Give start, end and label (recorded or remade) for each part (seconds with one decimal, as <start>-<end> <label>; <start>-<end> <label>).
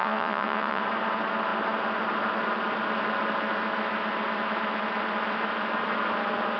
0.0-0.8 remade; 0.8-6.6 recorded